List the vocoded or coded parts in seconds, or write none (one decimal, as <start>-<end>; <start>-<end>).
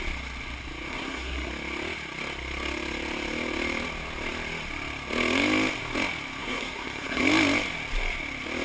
0.9-1.5; 6.4-7.2